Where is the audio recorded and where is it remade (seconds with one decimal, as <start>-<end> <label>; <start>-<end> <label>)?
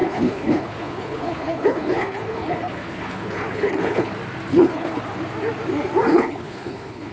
0.0-4.1 remade; 4.1-4.5 recorded; 4.5-5.0 remade; 5.0-6.1 recorded; 6.1-7.1 remade